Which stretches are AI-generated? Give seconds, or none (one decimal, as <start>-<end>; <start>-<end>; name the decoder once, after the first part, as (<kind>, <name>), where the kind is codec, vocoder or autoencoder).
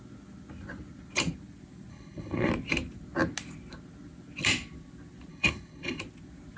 1.9-2.5 (codec, HILCodec); 5.3-6.0